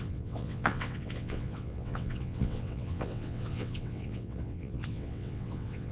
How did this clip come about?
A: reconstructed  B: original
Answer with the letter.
A